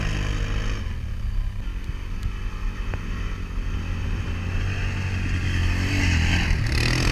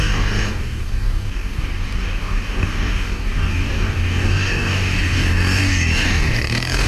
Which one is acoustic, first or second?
first